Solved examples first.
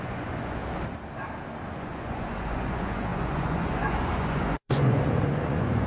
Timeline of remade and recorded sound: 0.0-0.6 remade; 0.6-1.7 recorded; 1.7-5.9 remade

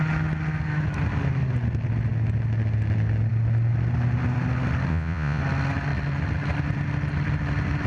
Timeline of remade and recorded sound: 0.0-4.9 recorded; 4.9-5.4 remade; 5.4-7.9 recorded

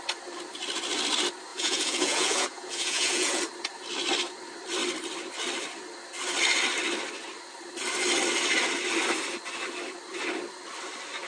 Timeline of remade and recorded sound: 0.0-1.5 recorded; 1.5-3.4 remade; 3.4-11.3 recorded

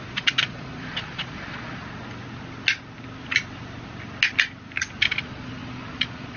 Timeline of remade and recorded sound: 0.0-1.8 remade; 1.8-5.2 recorded; 5.2-6.4 remade

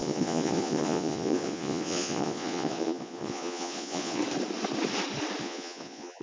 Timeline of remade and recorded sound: 0.0-4.2 remade; 4.2-5.4 recorded; 5.4-6.2 remade